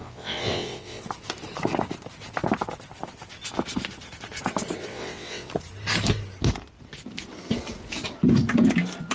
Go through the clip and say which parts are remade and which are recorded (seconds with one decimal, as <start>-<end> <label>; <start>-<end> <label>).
0.0-1.0 remade; 1.0-4.9 recorded; 4.9-5.5 remade; 5.5-9.1 recorded

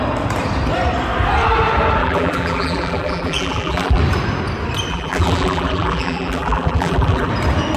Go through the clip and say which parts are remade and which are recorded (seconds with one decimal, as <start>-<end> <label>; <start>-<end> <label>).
0.0-2.0 recorded; 2.0-4.0 remade; 4.0-4.9 recorded; 4.9-7.3 remade; 7.3-7.8 recorded

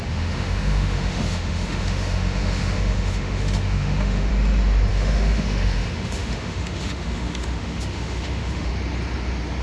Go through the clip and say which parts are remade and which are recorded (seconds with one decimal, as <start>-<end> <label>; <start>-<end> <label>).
0.0-4.3 remade; 4.3-4.9 recorded; 4.9-8.7 remade; 8.7-9.6 recorded

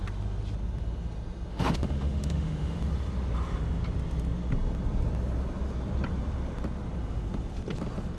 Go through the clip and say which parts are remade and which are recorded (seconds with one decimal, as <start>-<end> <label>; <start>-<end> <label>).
0.0-1.5 recorded; 1.5-2.8 remade; 2.8-8.2 recorded

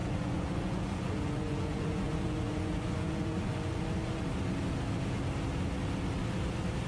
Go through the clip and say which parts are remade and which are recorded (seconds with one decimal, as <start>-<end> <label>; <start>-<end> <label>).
0.0-3.8 remade; 3.8-6.9 recorded

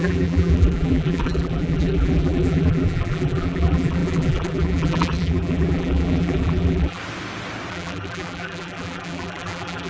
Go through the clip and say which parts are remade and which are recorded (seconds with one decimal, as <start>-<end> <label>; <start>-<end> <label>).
0.0-7.0 remade; 7.0-7.7 recorded; 7.7-9.9 remade